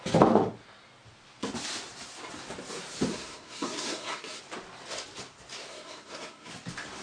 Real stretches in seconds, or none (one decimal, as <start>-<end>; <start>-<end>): 0.0-3.1; 4.4-5.7; 6.5-7.0